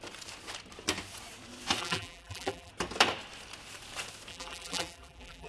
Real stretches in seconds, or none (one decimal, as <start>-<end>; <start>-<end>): 0.0-1.8; 2.7-4.3